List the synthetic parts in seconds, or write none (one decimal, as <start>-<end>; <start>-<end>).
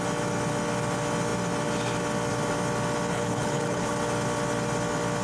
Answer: 3.1-3.9